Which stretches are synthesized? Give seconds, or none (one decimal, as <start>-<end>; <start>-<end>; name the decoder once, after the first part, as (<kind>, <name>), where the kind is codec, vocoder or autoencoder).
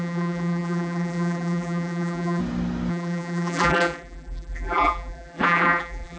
0.0-2.4 (vocoder, BigVGAN v2); 2.9-6.2